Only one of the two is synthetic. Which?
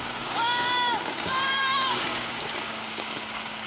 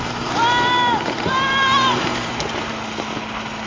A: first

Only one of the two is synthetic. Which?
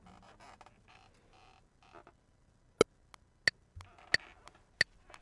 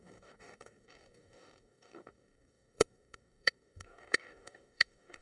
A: second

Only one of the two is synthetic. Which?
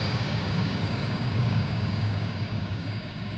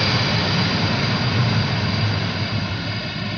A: first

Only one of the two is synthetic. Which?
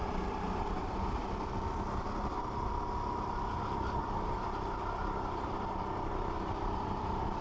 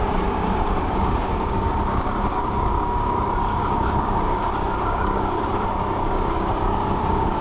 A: second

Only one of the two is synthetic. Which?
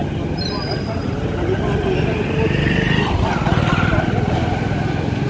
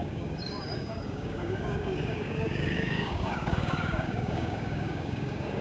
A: second